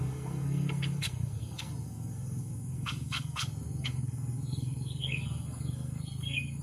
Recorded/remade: remade